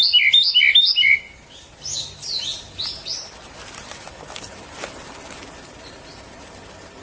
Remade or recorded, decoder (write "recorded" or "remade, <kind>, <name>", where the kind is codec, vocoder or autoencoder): recorded